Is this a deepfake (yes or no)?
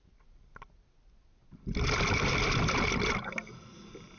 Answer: no